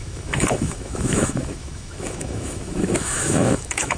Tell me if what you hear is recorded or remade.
remade